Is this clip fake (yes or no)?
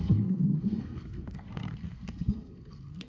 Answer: yes